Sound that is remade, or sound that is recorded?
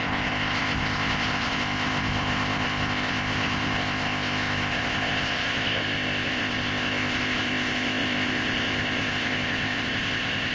remade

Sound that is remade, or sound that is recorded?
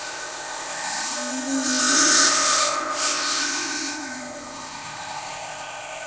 remade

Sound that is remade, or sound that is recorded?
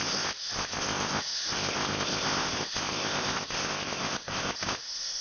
remade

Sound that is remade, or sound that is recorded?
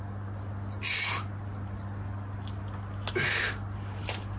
recorded